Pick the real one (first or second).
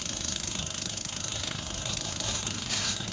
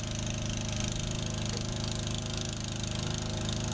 second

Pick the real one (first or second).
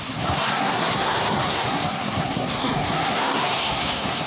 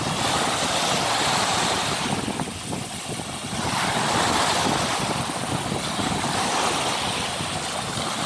second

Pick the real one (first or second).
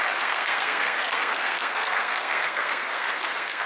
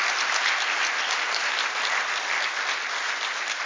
second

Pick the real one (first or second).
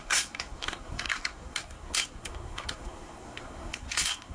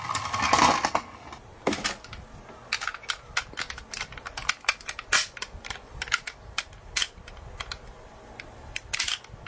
second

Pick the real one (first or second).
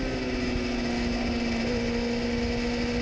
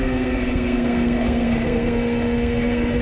first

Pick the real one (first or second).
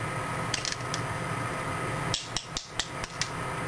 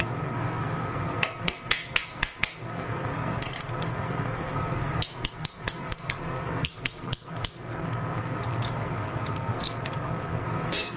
first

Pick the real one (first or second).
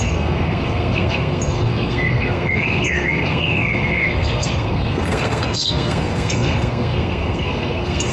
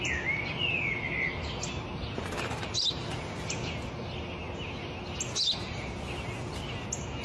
second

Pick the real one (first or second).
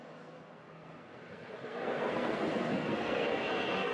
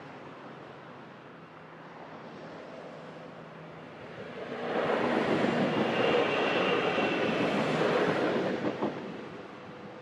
second